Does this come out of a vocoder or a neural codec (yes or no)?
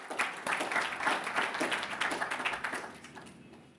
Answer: no